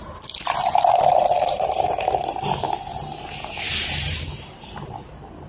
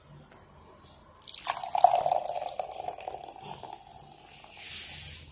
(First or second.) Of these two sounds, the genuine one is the second